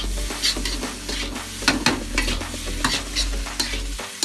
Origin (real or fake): real